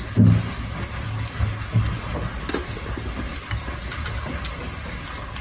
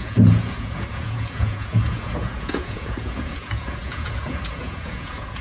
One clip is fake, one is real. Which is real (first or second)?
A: first